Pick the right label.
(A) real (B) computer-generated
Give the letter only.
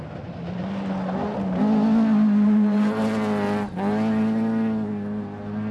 A